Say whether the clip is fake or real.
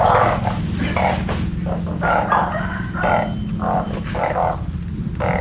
real